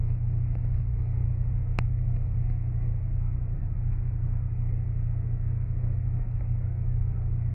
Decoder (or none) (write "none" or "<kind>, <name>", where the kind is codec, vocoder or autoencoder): codec, SNAC